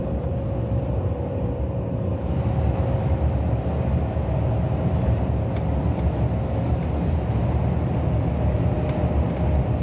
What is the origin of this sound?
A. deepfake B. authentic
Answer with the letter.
B